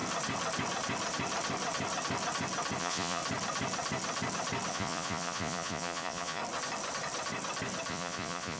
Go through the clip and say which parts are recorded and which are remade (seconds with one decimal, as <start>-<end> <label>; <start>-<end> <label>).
0.0-2.8 recorded; 2.8-3.2 remade; 3.2-4.7 recorded; 4.7-6.4 remade; 6.4-7.9 recorded; 7.9-8.6 remade